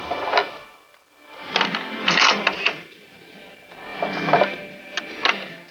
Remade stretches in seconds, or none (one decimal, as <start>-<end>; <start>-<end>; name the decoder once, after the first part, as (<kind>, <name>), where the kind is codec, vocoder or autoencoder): none